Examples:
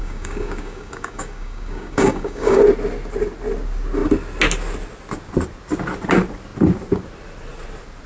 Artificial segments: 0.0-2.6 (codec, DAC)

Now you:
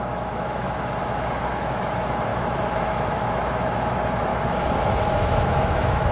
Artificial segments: 0.0-4.3 (autoencoder, DAC-VAE); 4.9-6.1

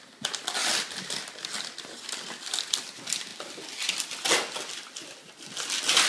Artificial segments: none

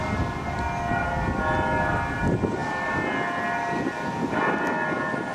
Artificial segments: none